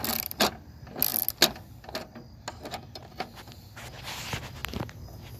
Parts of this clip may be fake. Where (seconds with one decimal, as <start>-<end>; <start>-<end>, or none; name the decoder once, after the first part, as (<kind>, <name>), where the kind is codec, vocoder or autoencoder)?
none